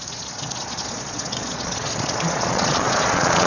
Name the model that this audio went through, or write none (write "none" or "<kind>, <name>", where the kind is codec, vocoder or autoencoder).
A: vocoder, Vocos